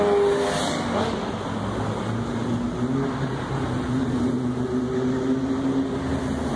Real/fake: real